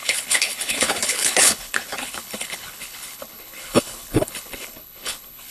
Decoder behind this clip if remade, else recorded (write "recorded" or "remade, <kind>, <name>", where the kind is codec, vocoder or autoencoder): remade, codec, HILCodec